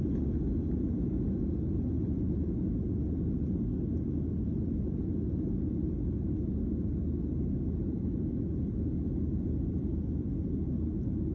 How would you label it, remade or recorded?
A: recorded